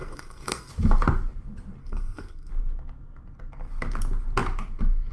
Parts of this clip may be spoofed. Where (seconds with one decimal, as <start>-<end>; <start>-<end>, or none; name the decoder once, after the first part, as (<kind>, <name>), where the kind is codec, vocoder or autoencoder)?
0.0-0.7 (codec, SNAC); 1.8-2.5